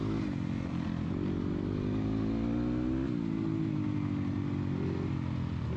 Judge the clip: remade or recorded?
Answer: recorded